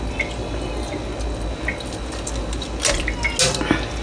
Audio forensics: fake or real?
real